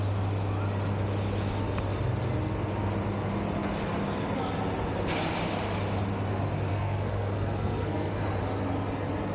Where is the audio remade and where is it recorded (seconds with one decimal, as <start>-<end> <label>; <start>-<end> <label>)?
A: 0.0-6.7 recorded; 6.7-8.2 remade; 8.2-9.3 recorded